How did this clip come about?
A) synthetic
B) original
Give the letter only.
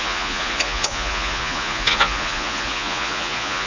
A